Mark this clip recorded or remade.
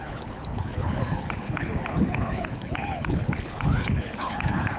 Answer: remade